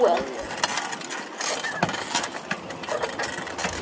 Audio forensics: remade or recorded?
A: recorded